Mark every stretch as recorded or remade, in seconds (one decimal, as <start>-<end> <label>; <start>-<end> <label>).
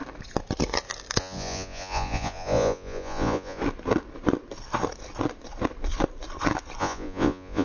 0.0-1.2 recorded; 1.2-3.6 remade; 3.6-6.8 recorded; 6.8-7.6 remade